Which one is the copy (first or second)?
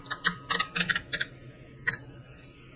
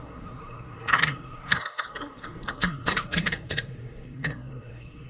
second